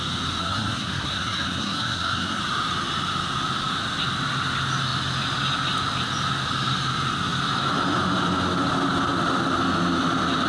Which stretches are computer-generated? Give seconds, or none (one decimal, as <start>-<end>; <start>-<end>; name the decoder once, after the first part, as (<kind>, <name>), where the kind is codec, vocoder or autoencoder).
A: 0.4-2.4 (codec, SNAC)